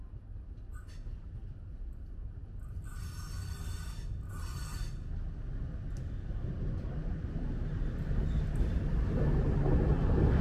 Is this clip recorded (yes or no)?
yes